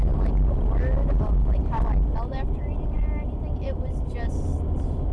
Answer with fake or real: real